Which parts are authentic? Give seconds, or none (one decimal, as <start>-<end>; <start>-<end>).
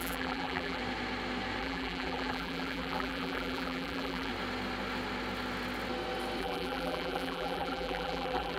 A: 0.8-1.6; 4.3-6.4